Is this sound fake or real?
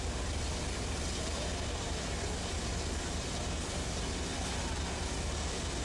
real